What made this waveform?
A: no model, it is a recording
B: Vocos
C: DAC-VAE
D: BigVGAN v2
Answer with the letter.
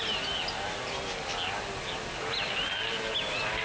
A